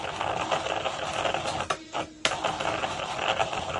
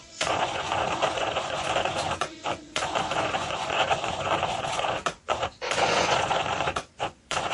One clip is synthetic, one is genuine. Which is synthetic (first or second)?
second